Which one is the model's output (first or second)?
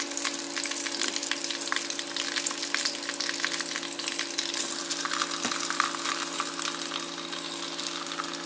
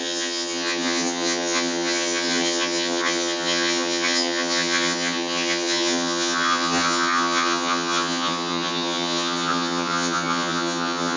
second